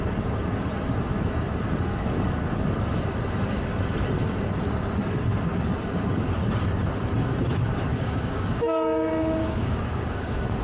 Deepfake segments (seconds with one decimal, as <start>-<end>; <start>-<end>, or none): 7.9-10.6